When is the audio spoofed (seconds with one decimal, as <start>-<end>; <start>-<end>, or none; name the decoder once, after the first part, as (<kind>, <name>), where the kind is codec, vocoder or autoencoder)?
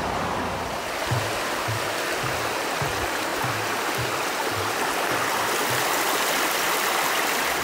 none